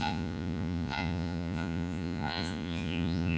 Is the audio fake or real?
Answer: fake